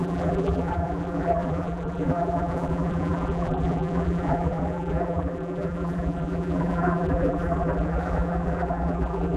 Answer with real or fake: fake